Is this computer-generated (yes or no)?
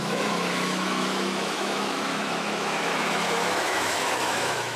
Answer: yes